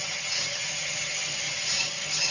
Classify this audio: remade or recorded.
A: remade